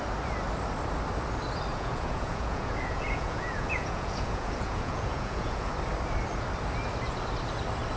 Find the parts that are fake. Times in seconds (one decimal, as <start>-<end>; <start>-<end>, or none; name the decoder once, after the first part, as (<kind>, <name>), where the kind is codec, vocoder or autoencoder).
1.7-5.7 (vocoder, Vocos)